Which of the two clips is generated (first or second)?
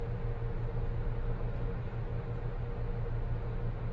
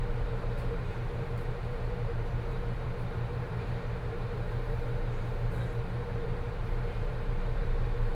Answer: second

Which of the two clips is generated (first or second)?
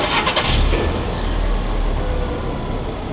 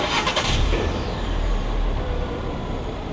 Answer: second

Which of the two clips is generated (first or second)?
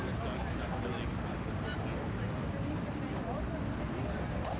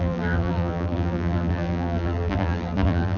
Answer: second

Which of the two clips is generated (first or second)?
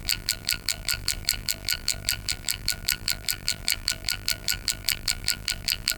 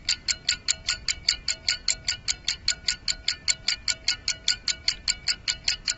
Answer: first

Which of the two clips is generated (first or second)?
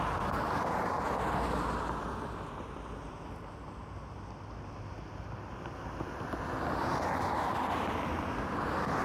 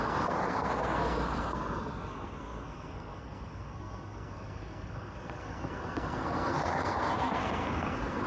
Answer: second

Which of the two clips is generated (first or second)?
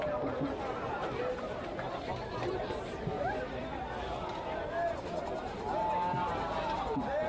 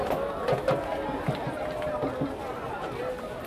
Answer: first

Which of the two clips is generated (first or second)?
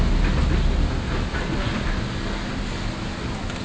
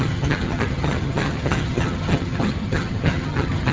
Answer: second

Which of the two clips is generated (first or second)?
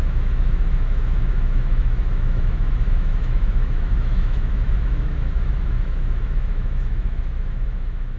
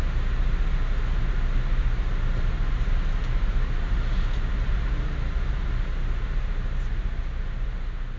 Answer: first